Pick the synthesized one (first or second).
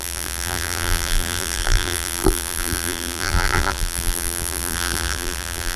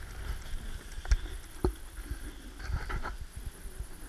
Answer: first